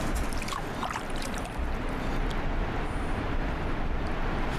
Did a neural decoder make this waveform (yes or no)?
yes